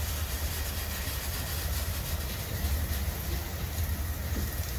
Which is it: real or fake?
real